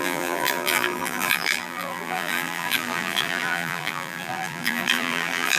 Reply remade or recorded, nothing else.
remade